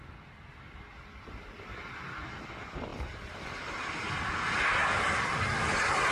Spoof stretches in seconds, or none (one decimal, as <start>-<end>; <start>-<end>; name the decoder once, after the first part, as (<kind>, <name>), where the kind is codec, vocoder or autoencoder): none